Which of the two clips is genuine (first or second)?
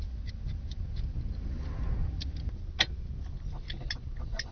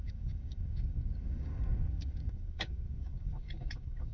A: first